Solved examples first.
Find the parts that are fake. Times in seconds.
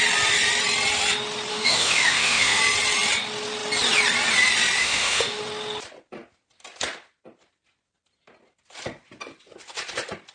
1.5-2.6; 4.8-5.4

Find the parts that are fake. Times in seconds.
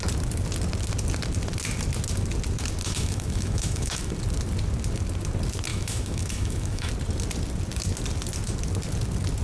2.8-4.1; 5.7-6.9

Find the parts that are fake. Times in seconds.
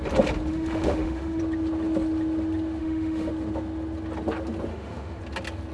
0.5-1.4; 2.8-3.3; 4.7-5.2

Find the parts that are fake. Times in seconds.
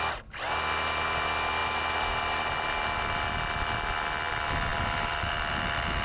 none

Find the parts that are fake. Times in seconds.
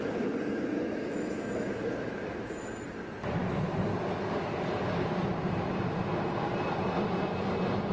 0.5-2.8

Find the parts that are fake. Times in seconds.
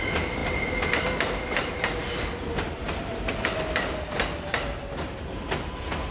none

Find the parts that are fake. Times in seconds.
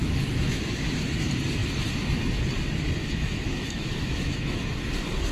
0.0-0.7; 3.0-4.7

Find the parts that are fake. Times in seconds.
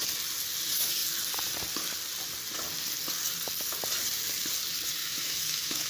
5.0-5.9